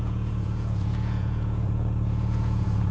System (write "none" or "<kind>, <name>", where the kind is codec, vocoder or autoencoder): vocoder, Vocos